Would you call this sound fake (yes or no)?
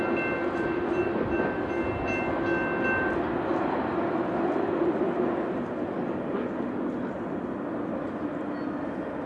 no